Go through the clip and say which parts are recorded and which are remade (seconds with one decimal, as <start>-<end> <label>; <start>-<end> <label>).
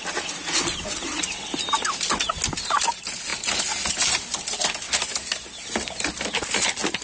0.0-7.0 recorded